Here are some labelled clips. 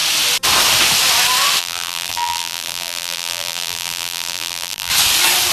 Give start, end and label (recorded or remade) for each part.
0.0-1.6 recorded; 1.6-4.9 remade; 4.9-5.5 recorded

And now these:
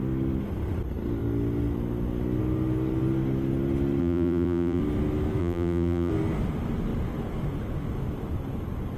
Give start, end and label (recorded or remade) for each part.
0.0-4.0 recorded; 4.0-4.8 remade; 4.8-5.4 recorded; 5.4-6.1 remade; 6.1-9.0 recorded

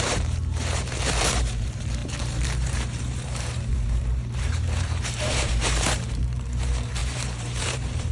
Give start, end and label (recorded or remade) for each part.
0.0-8.1 remade

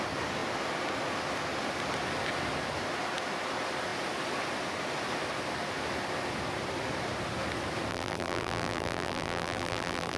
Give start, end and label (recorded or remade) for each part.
0.0-7.9 recorded; 7.9-10.2 remade